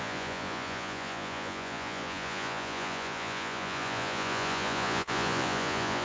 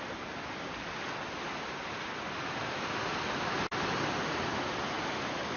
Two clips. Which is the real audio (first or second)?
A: second